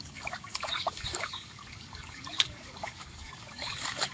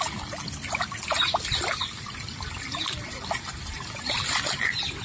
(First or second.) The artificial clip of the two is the first